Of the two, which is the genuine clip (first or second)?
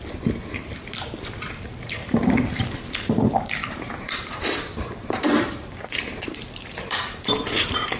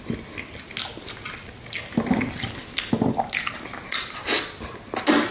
second